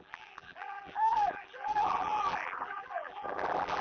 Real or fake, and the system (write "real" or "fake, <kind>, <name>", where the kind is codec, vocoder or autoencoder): fake, vocoder, BigVGAN v2